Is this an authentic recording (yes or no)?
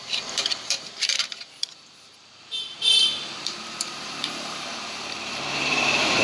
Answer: no